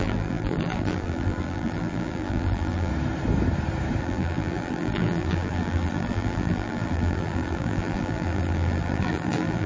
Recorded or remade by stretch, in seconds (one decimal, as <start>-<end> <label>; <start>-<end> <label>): 0.0-2.9 remade; 2.9-4.0 recorded; 4.0-9.7 remade